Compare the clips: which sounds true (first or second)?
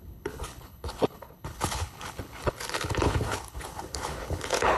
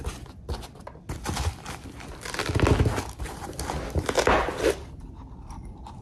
second